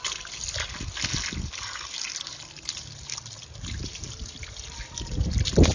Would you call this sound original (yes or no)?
yes